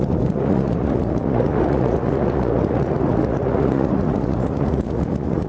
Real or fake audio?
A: fake